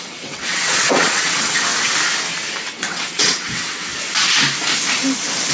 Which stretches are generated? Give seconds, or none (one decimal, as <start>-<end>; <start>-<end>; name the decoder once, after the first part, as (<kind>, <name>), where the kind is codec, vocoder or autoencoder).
0.0-1.7 (vocoder, WaveNeXt); 2.7-3.9